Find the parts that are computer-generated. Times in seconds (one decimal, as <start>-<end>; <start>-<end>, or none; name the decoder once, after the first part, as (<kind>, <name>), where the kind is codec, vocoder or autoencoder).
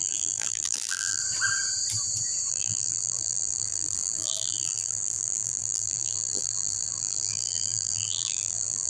0.0-1.2 (vocoder, BigVGAN v2); 2.5-8.9